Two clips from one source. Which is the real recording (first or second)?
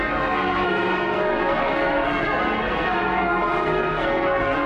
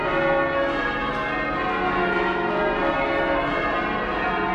second